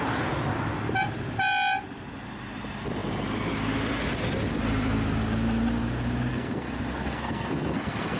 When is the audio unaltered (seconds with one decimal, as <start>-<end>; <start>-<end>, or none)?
0.0-6.3